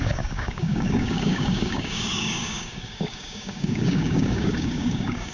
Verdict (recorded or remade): remade